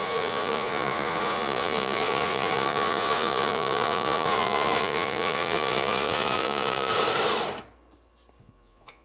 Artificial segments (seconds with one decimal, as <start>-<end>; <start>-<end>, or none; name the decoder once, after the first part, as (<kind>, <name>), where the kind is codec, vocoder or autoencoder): 0.0-6.9 (vocoder, Vocos); 8.4-9.0